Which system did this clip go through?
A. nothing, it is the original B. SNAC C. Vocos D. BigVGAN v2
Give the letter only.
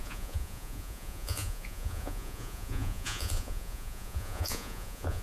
C